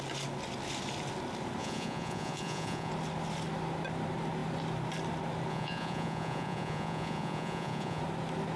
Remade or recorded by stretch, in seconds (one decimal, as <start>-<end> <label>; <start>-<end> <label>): 0.0-1.6 recorded; 1.6-2.9 remade; 2.9-5.5 recorded; 5.5-8.0 remade; 8.0-8.6 recorded